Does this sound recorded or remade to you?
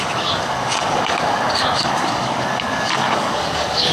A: remade